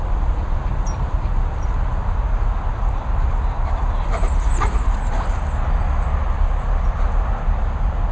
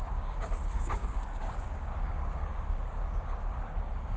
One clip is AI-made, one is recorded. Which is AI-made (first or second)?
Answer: second